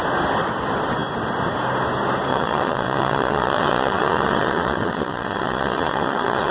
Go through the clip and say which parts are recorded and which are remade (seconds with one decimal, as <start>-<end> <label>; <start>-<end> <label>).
0.0-2.3 recorded; 2.3-6.5 remade